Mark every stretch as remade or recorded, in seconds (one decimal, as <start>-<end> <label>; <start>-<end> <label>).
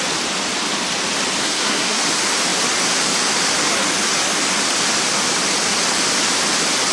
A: 0.0-1.4 recorded; 1.4-2.0 remade; 2.0-6.9 recorded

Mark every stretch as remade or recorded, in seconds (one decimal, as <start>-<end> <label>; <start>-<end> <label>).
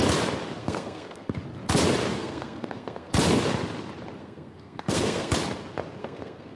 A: 0.0-0.6 recorded; 0.6-1.4 remade; 1.4-2.1 recorded; 2.1-3.1 remade; 3.1-4.2 recorded; 4.2-5.3 remade; 5.3-6.0 recorded; 6.0-6.6 remade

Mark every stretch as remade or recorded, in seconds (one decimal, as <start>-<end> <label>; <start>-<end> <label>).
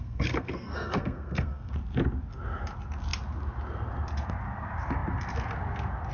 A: 0.0-1.7 remade; 1.7-6.1 recorded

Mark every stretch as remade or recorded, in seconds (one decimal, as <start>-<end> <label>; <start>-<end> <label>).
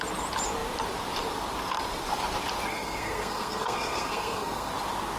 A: 0.0-2.7 recorded; 2.7-4.7 remade; 4.7-5.2 recorded